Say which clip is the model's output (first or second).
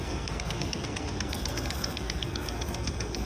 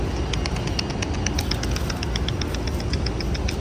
first